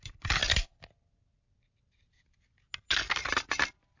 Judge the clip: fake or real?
real